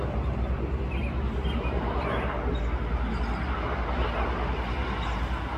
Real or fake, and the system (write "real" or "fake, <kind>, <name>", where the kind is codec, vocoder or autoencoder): real